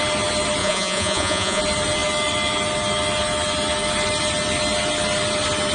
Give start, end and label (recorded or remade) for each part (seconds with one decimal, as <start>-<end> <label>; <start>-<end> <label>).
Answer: 0.0-0.6 recorded; 0.6-1.6 remade; 1.6-5.7 recorded